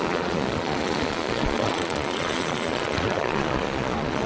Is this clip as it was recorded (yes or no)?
no